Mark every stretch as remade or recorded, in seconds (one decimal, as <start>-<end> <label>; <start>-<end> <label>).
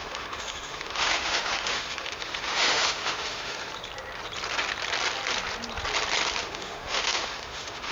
0.0-3.7 remade; 3.7-6.4 recorded; 6.4-7.9 remade